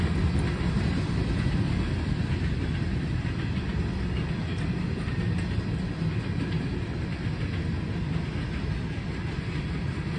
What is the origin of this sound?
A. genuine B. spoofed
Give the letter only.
A